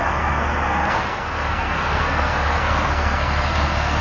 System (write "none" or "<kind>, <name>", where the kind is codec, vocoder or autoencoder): codec, SNAC